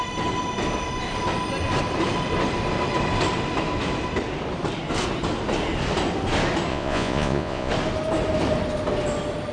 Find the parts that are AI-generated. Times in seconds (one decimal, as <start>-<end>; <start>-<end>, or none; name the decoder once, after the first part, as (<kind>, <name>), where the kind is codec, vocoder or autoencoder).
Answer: 6.7-7.7 (vocoder, Vocos)